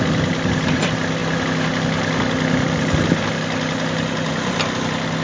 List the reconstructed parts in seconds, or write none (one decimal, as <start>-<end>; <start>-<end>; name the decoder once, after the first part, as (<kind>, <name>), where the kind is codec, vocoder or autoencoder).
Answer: none